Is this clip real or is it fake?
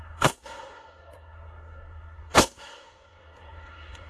fake